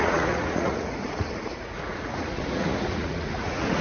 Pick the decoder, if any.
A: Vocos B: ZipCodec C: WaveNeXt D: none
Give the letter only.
A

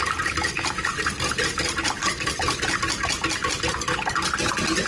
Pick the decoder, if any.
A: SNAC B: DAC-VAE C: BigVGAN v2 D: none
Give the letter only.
D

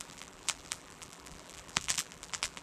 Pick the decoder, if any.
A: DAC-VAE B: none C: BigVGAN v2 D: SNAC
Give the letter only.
C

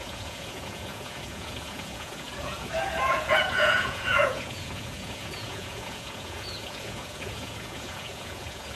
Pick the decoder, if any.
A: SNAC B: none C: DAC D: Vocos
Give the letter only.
D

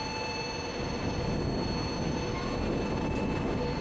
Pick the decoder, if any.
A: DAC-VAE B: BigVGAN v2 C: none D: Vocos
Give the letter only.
C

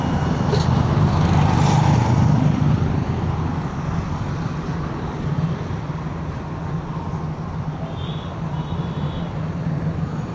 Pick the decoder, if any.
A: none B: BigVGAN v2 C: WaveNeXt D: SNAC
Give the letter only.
A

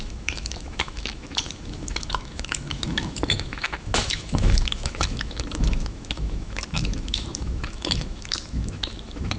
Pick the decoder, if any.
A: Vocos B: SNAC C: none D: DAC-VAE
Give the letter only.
D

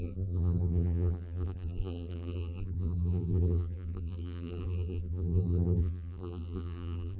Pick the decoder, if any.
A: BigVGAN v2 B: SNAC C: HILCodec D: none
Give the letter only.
A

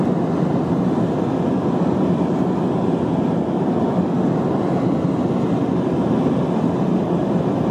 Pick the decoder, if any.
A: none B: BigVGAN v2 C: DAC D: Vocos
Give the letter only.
A